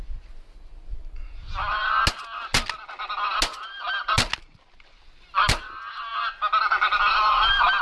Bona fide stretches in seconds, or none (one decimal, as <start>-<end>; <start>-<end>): 0.0-7.8